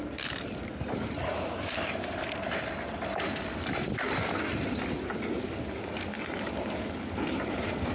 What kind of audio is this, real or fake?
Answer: real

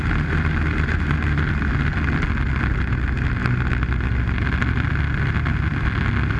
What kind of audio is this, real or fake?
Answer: real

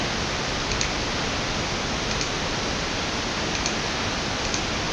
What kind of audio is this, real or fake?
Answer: real